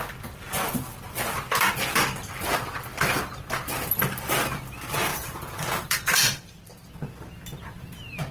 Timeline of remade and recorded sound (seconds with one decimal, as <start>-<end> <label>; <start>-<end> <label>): 0.0-5.1 recorded; 5.1-6.6 remade; 6.6-8.3 recorded